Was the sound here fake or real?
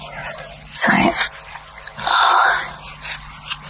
real